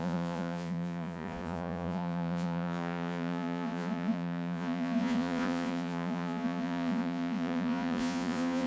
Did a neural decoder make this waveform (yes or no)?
yes